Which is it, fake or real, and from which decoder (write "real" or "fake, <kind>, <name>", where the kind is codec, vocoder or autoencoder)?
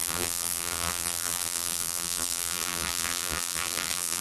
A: fake, vocoder, BigVGAN v2